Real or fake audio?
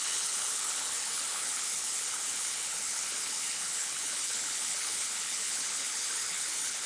fake